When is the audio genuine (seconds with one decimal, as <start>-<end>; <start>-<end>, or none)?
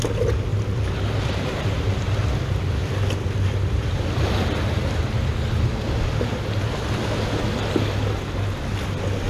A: 0.0-9.3